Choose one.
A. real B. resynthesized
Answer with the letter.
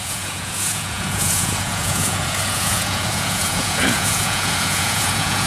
B